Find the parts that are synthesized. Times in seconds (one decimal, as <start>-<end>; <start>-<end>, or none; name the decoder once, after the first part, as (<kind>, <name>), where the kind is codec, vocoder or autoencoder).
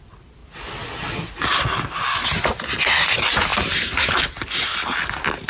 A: 0.0-0.4 (vocoder, BigVGAN v2); 2.2-5.5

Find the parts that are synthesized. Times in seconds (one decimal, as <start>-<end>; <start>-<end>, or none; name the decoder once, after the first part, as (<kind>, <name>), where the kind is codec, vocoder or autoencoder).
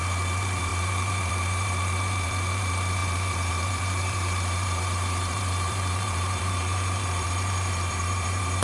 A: 0.0-8.6 (vocoder, BigVGAN v2)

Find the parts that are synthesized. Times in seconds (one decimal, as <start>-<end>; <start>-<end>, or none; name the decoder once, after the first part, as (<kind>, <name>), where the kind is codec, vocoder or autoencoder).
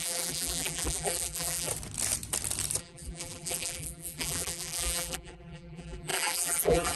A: 0.0-1.7 (vocoder, BigVGAN v2); 2.8-7.0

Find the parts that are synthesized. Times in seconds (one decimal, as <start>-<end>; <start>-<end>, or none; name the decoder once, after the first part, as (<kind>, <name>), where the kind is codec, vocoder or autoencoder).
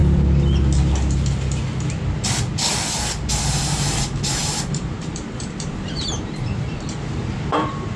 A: 3.3-8.0 (vocoder, BigVGAN v2)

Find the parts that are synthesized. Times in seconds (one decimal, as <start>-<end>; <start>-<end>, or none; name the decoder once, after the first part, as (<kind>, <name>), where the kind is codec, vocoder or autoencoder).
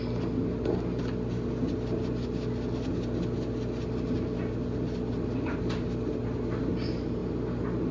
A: none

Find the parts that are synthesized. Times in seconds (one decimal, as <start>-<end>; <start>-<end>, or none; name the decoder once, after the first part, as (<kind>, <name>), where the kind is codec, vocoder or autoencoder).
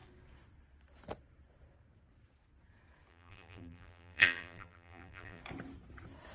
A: 3.1-5.4 (vocoder, BigVGAN v2)